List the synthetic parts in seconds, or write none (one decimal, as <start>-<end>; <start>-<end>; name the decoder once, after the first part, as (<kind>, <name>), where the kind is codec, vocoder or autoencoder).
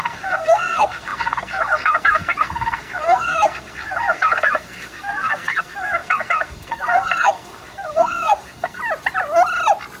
0.0-8.8 (codec, SNAC)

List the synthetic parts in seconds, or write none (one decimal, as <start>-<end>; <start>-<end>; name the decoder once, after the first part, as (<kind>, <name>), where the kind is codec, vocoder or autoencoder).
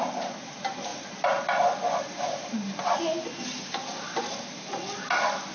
none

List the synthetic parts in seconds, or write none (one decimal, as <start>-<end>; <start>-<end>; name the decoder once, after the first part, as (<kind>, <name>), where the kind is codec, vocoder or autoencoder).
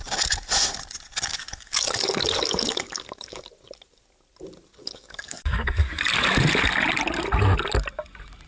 1.3-3.5 (codec, DAC); 4.8-6.0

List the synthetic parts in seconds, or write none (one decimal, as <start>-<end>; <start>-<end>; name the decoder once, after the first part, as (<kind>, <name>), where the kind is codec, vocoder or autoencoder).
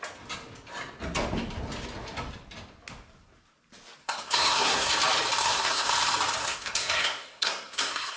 4.0-4.9 (codec, SNAC); 5.4-5.9; 6.4-8.2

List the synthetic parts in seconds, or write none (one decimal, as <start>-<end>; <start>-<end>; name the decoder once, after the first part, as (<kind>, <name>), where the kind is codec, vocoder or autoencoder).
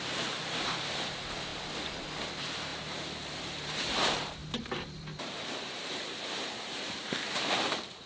0.0-1.5 (vocoder, BigVGAN v2); 2.3-8.1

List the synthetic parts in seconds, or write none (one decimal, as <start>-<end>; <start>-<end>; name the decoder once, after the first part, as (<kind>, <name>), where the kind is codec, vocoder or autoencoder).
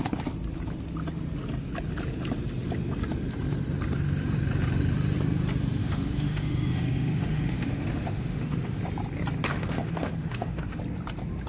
5.8-8.8 (autoencoder, DAC-VAE); 9.5-10.8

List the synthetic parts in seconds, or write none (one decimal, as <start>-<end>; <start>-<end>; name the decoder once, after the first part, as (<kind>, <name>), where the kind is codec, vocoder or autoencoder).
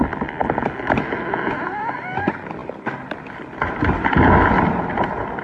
none